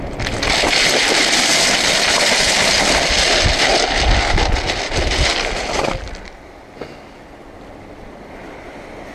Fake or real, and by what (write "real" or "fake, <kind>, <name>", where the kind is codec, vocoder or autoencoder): real